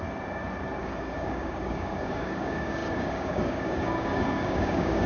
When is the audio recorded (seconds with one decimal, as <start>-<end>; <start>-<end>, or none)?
0.0-0.8